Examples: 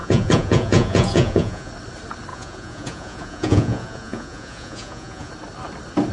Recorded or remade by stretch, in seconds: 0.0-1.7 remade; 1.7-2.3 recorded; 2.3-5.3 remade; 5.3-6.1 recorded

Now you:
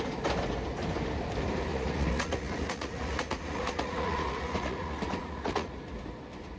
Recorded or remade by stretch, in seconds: 0.0-1.7 recorded; 1.7-5.7 remade; 5.7-6.6 recorded